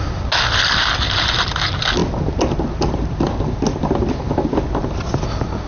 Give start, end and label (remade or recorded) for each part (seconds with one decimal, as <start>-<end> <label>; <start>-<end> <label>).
0.0-5.7 recorded